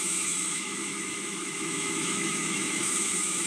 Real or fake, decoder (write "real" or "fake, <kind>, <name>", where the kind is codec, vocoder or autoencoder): fake, autoencoder, DAC-VAE